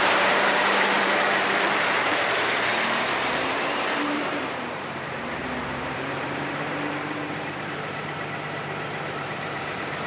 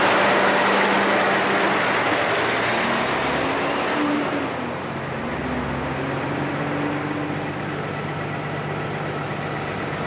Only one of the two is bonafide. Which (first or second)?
second